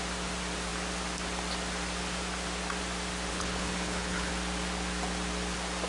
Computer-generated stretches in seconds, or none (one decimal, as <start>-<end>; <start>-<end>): 3.3-4.3